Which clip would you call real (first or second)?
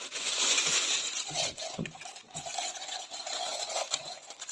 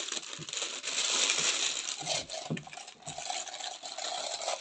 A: second